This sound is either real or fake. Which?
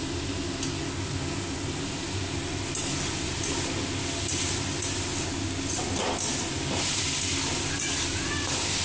real